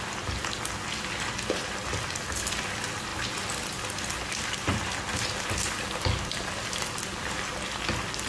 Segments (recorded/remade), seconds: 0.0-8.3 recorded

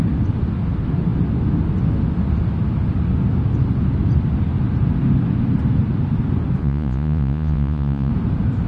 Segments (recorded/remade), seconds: 0.0-6.6 recorded; 6.6-8.1 remade; 8.1-8.7 recorded

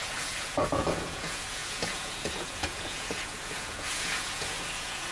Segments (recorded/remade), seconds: 0.0-5.1 remade

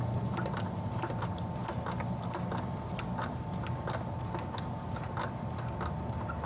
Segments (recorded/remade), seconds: 0.0-6.5 recorded

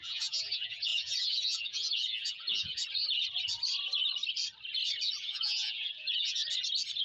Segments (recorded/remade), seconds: 0.0-2.8 remade; 2.8-5.2 recorded; 5.2-6.4 remade; 6.4-7.0 recorded

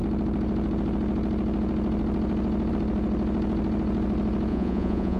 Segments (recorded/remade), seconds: 0.0-4.5 recorded; 4.5-5.2 remade

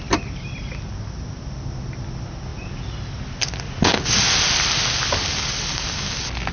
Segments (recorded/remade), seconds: 0.0-6.5 recorded

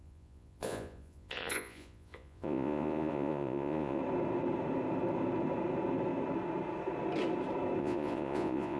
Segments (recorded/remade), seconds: 0.0-4.0 remade; 4.0-7.8 recorded; 7.8-8.8 remade